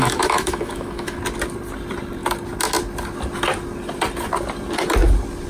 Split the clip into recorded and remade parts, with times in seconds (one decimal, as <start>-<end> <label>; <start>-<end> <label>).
0.0-1.2 remade; 1.2-5.5 recorded